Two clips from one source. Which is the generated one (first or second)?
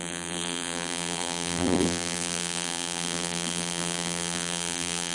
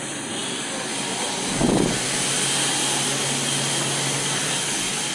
first